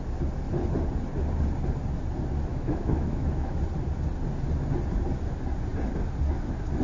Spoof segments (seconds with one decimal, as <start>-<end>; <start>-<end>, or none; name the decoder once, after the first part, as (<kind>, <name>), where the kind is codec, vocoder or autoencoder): 2.5-3.6 (autoencoder, DAC-VAE)